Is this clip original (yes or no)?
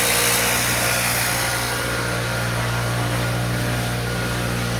no